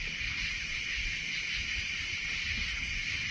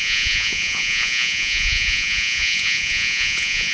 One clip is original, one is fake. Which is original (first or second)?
first